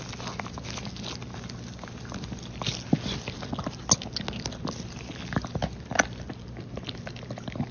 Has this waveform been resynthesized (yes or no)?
no